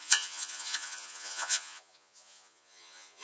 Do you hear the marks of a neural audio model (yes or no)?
yes